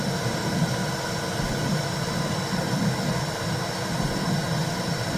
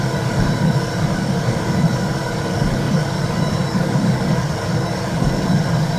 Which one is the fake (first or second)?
second